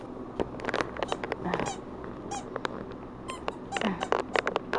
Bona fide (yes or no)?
yes